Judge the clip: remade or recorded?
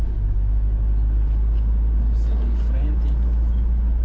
recorded